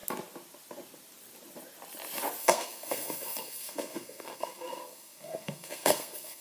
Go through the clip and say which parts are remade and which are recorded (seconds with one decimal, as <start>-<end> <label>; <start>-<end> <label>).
0.0-2.4 recorded; 2.4-6.4 remade